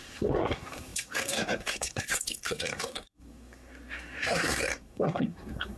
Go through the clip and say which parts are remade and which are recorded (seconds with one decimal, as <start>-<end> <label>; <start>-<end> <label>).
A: 0.0-5.8 remade